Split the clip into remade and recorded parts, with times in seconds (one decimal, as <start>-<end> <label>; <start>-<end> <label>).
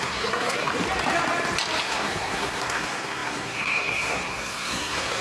0.0-0.7 remade; 0.7-1.8 recorded; 1.8-5.2 remade